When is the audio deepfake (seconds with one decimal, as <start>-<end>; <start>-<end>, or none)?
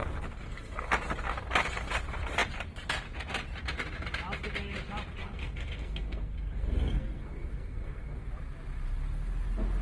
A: 0.0-0.9; 5.2-8.3